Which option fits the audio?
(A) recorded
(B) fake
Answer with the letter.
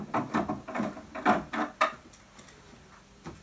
A